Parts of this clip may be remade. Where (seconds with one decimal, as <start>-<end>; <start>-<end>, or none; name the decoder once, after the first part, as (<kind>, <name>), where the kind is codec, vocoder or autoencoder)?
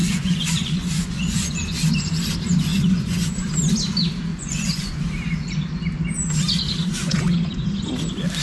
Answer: 0.0-1.8 (vocoder, Vocos); 2.7-3.5; 4.3-5.0; 7.0-7.9